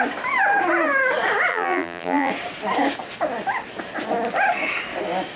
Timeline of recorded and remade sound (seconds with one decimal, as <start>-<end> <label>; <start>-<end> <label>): 0.0-1.5 recorded; 1.5-2.3 remade; 2.3-5.4 recorded